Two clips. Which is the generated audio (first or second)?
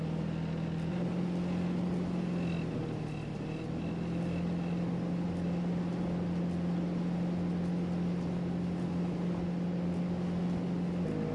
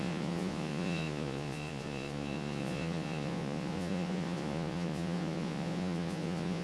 second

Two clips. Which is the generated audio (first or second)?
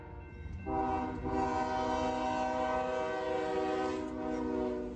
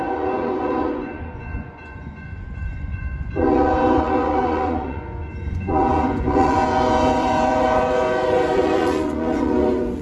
second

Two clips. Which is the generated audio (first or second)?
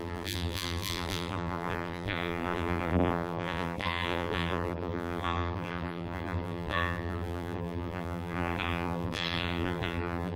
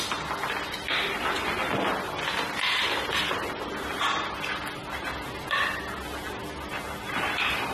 first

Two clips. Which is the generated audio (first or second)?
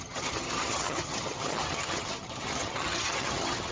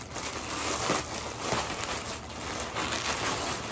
first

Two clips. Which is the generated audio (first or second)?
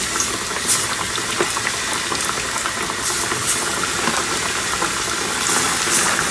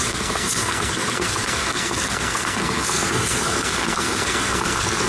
second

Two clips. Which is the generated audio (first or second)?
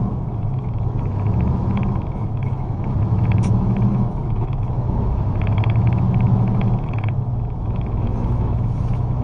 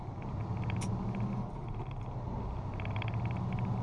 first